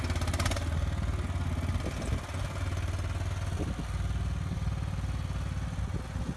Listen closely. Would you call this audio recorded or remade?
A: recorded